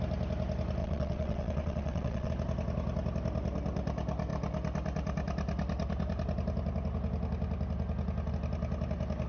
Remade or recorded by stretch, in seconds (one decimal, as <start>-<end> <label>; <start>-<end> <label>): 0.0-0.8 recorded; 0.8-2.3 remade; 2.3-9.3 recorded